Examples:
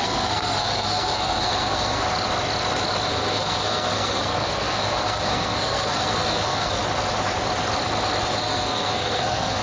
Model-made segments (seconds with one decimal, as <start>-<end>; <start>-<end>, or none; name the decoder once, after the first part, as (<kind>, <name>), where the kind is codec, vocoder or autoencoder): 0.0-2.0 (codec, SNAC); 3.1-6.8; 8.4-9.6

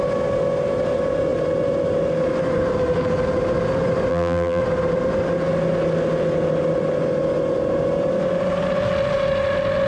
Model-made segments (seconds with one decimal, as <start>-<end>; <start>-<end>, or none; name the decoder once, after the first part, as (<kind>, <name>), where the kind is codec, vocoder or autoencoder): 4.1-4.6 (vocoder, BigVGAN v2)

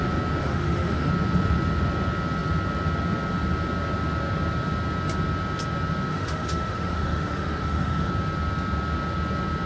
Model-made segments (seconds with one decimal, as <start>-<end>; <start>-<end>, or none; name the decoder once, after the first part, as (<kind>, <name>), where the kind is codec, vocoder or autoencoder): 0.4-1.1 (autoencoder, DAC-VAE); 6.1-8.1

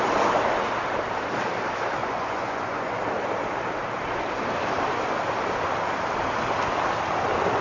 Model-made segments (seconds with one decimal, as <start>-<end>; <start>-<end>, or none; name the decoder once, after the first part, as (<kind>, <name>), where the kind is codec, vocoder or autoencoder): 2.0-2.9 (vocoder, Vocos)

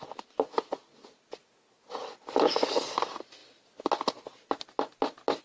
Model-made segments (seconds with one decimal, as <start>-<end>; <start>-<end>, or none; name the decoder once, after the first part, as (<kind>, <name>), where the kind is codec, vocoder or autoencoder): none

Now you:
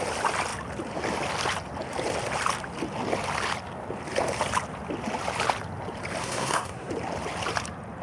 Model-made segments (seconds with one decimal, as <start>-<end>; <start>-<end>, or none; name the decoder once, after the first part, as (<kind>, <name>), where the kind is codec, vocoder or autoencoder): 6.2-6.9 (codec, SNAC)